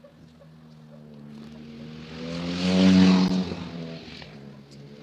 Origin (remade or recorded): recorded